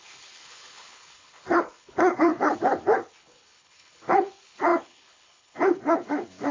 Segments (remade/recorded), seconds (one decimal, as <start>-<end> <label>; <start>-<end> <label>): 0.0-6.5 remade